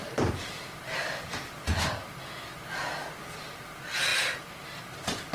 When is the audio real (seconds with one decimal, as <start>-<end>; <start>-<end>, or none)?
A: 3.2-5.3